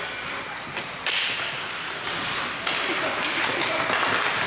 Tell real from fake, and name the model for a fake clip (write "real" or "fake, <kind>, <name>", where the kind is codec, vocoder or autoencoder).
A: real